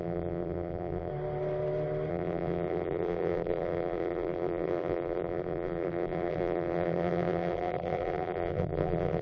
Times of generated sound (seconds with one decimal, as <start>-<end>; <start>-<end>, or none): 0.0-1.1; 2.1-9.2